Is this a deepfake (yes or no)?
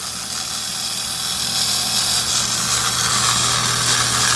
no